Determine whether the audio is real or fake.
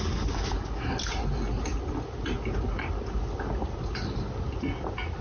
real